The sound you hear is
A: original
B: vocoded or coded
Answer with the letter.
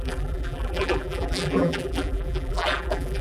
B